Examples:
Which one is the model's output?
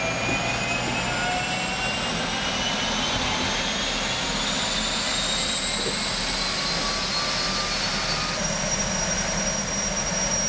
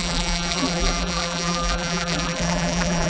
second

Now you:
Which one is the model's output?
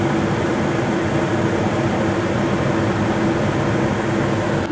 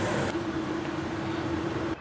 second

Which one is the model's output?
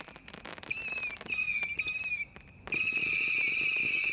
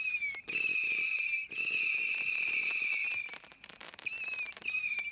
second